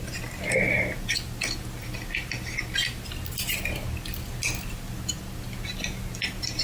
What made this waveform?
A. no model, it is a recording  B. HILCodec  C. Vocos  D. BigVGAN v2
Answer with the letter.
A